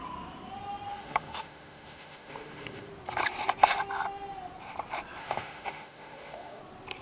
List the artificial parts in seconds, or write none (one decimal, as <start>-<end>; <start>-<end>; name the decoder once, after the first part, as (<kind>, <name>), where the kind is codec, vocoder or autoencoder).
0.9-2.9 (autoencoder, DAC-VAE); 5.2-6.6